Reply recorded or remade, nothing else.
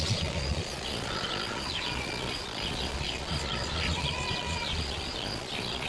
remade